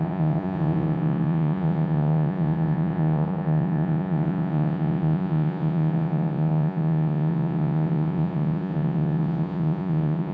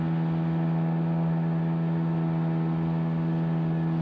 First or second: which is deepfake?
first